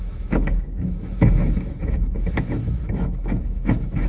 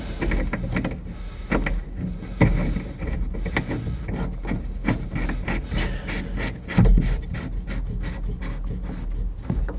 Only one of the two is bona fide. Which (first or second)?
second